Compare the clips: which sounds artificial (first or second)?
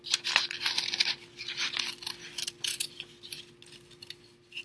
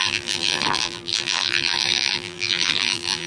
second